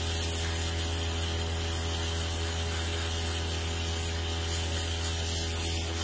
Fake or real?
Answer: real